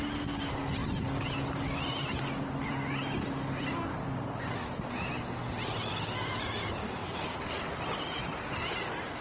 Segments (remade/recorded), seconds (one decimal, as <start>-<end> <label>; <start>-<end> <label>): 0.0-7.0 recorded; 7.0-7.6 remade; 7.6-8.2 recorded; 8.2-9.2 remade